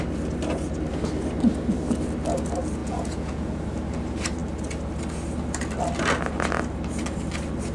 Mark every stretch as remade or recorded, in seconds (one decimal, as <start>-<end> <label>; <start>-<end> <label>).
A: 0.0-2.8 recorded; 2.8-3.6 remade; 3.6-7.7 recorded